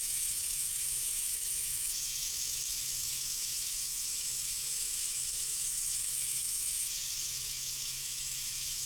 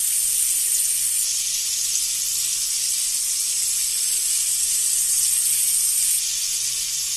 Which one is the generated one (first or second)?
first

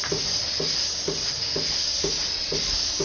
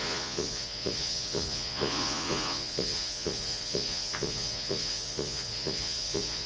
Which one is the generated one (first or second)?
second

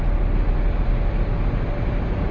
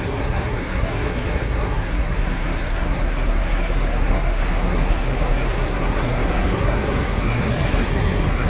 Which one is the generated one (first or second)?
second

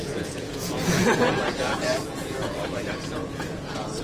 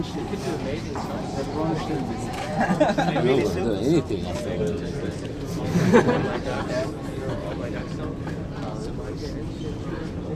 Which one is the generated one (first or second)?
first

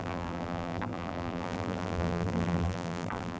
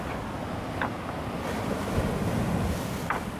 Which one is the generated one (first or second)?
first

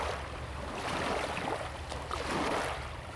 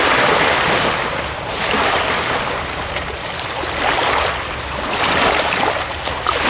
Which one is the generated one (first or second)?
second